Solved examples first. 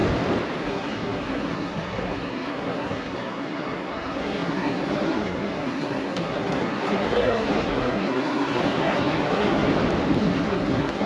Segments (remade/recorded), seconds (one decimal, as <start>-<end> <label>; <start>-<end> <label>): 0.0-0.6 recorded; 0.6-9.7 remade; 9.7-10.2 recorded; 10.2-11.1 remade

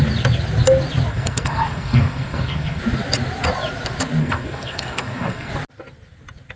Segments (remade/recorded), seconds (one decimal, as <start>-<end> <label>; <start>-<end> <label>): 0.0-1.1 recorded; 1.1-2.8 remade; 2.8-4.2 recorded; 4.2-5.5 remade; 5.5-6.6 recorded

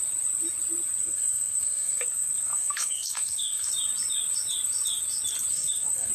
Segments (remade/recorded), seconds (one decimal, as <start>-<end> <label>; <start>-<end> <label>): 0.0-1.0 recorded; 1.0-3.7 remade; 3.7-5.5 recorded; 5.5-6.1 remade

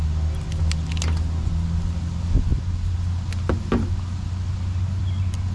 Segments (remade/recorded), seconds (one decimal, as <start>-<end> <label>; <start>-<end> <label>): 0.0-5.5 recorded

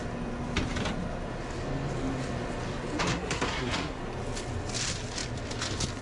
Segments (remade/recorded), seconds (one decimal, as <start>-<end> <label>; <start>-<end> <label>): 0.0-3.1 recorded; 3.1-4.0 remade; 4.0-6.0 recorded

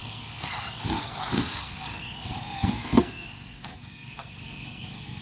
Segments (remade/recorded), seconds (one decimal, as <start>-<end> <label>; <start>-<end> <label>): 0.0-5.2 remade